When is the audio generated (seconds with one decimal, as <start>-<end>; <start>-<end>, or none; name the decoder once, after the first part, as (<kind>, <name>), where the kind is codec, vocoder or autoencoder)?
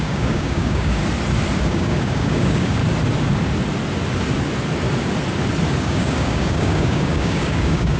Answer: 0.0-1.0 (codec, DAC); 1.6-2.8; 5.8-8.0